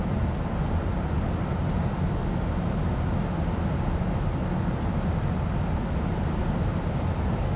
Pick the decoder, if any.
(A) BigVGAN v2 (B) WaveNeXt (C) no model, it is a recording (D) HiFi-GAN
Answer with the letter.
C